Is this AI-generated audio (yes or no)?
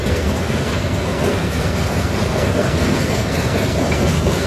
yes